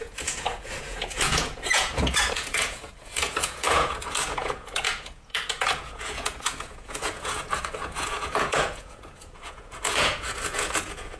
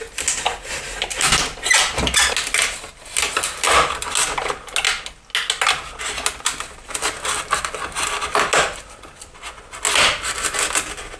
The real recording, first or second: second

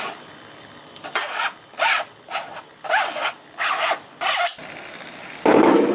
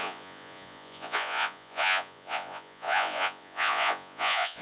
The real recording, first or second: first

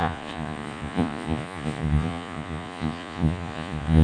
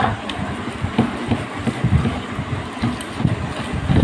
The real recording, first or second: second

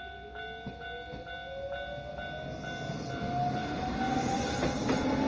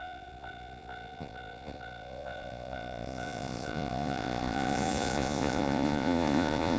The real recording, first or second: first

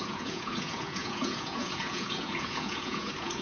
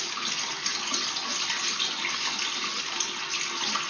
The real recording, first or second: second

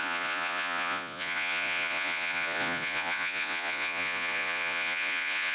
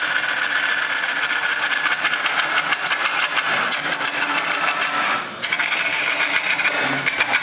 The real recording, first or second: second